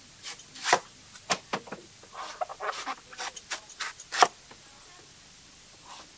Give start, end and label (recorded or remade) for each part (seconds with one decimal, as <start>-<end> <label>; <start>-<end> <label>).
0.0-6.2 recorded